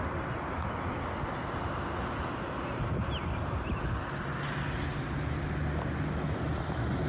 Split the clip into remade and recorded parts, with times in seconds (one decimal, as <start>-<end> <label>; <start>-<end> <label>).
0.0-7.1 recorded